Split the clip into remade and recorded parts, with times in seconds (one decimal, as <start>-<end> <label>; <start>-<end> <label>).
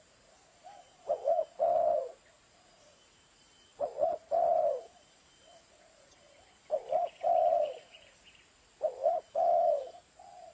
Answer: 0.0-10.5 remade